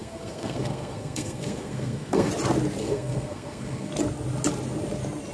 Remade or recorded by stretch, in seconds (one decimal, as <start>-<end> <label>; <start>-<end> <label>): 0.0-2.3 remade; 2.3-2.8 recorded; 2.8-3.9 remade; 3.9-5.3 recorded